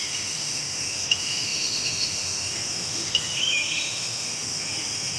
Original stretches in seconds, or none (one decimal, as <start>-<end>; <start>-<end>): none